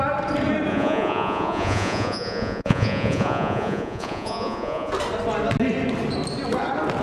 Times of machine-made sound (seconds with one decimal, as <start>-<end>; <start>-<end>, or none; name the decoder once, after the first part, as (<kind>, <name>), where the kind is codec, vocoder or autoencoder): 0.7-4.9 (vocoder, Vocos)